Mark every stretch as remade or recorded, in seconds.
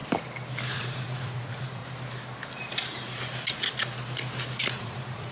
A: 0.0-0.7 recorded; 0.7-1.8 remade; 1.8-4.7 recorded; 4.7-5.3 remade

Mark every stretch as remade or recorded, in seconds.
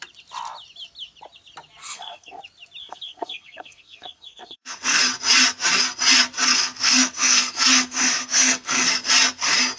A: 0.0-1.8 recorded; 1.8-2.4 remade; 2.4-2.8 recorded; 2.8-5.0 remade; 5.0-6.5 recorded; 6.5-9.1 remade; 9.1-9.8 recorded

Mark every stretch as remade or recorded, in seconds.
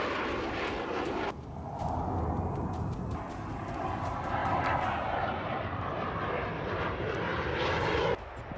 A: 0.0-4.4 recorded; 4.4-6.7 remade; 6.7-7.3 recorded; 7.3-7.8 remade; 7.8-8.6 recorded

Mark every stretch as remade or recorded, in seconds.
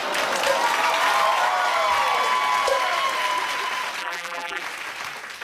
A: 0.0-4.0 recorded; 4.0-4.6 remade; 4.6-5.4 recorded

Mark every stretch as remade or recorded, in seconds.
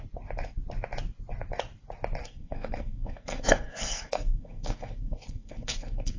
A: 0.0-2.2 recorded; 2.2-6.2 remade